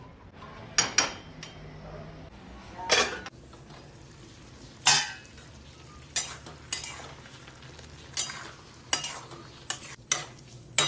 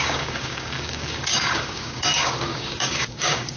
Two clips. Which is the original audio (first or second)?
first